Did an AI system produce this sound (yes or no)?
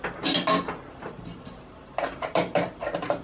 no